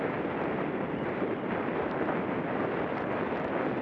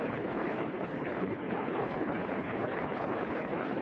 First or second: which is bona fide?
first